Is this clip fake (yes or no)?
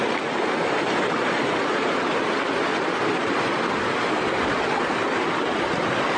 no